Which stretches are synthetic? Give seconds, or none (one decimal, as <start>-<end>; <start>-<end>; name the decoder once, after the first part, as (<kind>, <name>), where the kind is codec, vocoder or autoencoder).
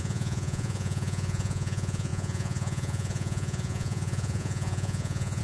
0.0-5.4 (vocoder, Vocos)